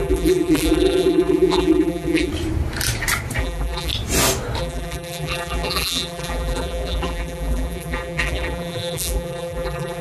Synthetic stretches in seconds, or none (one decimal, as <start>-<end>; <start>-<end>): 0.0-2.3; 3.4-3.9; 4.6-10.0